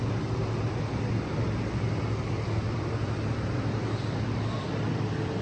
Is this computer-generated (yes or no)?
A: yes